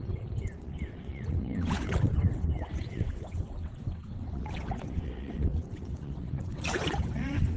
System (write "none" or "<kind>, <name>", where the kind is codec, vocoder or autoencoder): vocoder, WaveNeXt